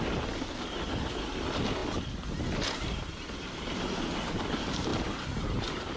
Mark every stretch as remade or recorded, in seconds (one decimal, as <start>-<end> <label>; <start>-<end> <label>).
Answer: 0.0-6.0 recorded